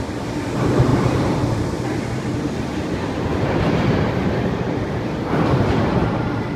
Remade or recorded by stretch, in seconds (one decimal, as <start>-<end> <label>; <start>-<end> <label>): 0.0-0.9 recorded; 0.9-1.4 remade; 1.4-3.3 recorded; 3.3-5.8 remade; 5.8-6.6 recorded